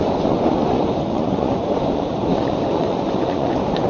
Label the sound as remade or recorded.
remade